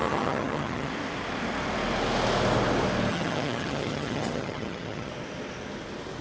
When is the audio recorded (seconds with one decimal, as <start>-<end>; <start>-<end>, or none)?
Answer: 0.9-3.1; 5.1-6.2